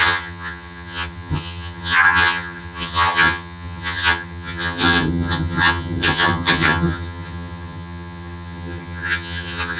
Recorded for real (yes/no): no